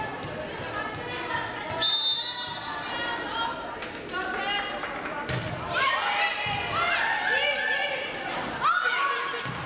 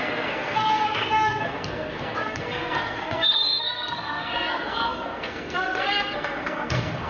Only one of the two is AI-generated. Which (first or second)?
second